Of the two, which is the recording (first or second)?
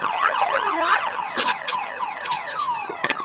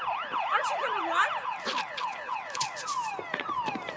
second